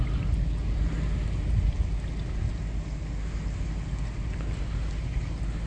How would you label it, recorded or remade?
recorded